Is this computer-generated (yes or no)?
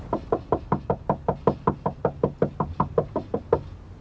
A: no